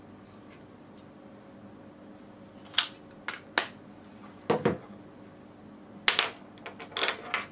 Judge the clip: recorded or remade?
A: recorded